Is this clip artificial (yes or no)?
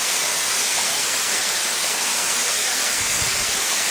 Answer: yes